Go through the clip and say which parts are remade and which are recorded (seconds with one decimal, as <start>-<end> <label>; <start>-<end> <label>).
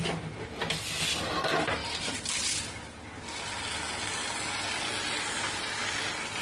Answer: 0.0-6.4 recorded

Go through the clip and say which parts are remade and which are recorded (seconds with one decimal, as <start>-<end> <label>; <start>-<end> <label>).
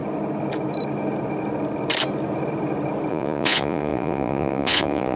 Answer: 0.0-3.1 recorded; 3.1-5.2 remade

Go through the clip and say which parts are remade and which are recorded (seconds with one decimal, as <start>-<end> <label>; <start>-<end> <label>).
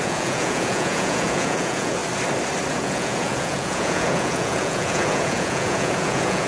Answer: 0.0-2.0 remade; 2.0-2.7 recorded; 2.7-6.5 remade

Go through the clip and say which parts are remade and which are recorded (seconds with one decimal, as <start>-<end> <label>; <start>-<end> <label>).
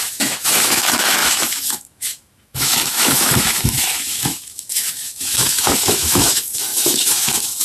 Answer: 0.0-7.6 remade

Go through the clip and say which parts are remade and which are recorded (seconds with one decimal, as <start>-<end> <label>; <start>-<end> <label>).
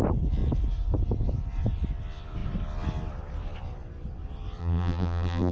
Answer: 0.0-4.6 recorded; 4.6-5.5 remade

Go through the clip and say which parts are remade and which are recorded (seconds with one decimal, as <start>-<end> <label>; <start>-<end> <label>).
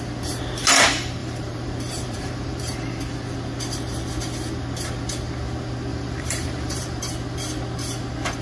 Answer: 0.0-1.2 recorded; 1.2-3.0 remade; 3.0-5.9 recorded; 5.9-7.0 remade; 7.0-8.4 recorded